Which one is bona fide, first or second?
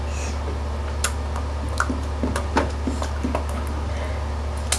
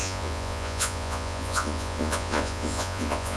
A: first